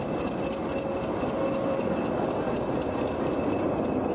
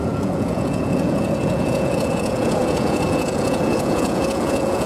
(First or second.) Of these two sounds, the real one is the first